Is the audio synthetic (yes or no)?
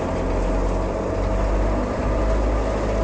no